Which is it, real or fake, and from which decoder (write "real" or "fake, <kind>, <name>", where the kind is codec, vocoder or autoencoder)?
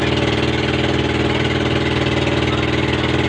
real